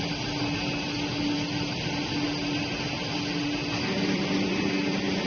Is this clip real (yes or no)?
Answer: yes